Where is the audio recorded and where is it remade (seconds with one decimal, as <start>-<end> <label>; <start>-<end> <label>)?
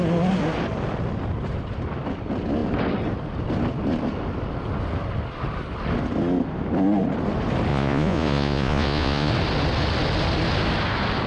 0.0-7.7 recorded; 7.7-9.3 remade; 9.3-11.3 recorded